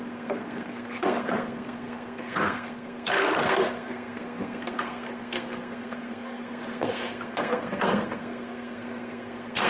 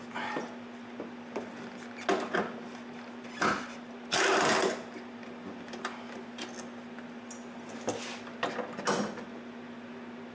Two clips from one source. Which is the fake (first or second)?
first